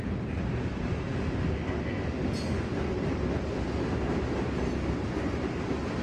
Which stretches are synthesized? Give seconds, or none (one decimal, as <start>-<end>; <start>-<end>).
none